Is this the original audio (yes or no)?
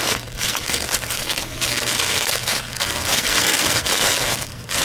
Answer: no